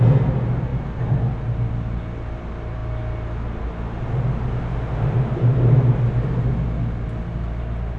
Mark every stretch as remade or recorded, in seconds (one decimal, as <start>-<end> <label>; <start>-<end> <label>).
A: 0.0-0.7 recorded; 0.7-1.3 remade; 1.3-8.0 recorded